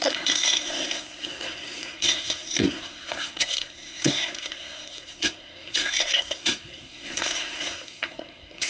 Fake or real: fake